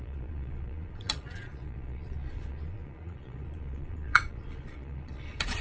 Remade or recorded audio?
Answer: remade